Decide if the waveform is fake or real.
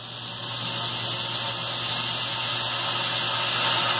real